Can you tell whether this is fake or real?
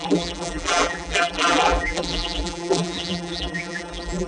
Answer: fake